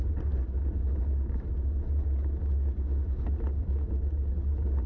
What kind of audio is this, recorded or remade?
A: recorded